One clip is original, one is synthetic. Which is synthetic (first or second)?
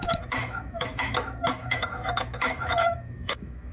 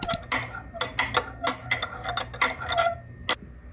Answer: first